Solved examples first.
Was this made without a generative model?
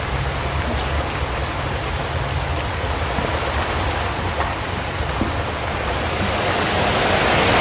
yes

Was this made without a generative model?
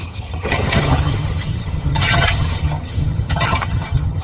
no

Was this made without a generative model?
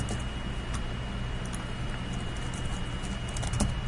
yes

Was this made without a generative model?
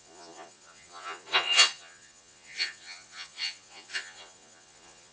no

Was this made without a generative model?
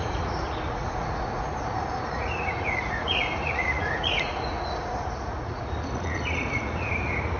no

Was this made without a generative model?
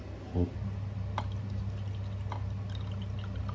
yes